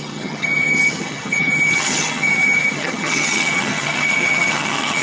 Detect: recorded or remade remade